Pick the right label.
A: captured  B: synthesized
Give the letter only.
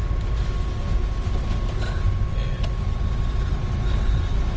A